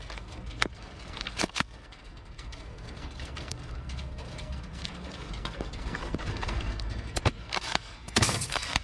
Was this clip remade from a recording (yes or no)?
yes